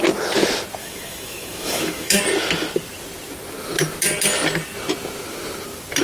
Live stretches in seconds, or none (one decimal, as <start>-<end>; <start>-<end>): 0.0-0.8; 2.2-6.0